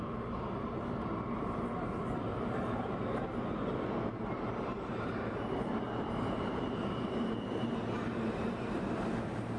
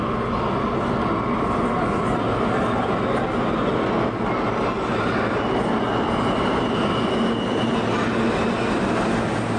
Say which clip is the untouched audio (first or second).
second